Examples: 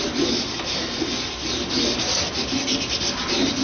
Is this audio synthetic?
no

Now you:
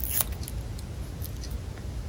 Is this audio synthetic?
no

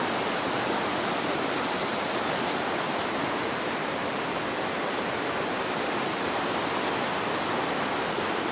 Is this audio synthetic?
no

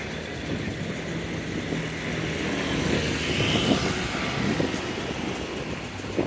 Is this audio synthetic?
no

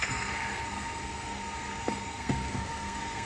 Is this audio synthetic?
yes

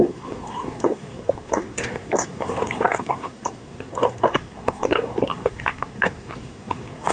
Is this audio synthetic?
yes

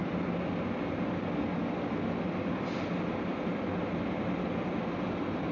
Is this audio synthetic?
no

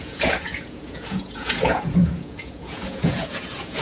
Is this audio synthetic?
yes